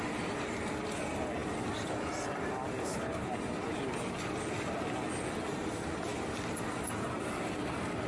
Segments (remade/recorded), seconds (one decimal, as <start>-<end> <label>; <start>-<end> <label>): 0.0-2.8 recorded; 2.8-3.3 remade; 3.3-8.1 recorded